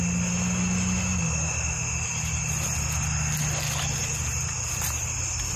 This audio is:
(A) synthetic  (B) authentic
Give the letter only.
B